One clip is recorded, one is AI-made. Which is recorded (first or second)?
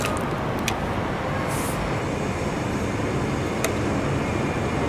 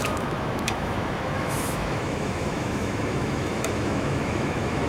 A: first